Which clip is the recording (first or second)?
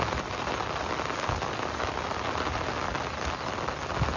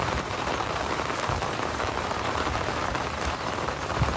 first